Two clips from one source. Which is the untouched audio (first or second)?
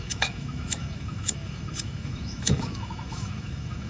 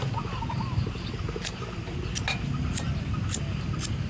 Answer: second